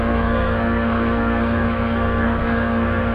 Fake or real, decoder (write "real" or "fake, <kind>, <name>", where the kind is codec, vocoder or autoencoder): fake, codec, SNAC